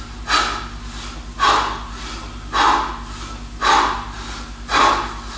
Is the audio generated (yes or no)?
no